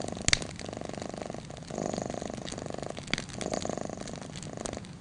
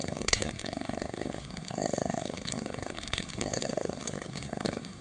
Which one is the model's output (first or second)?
second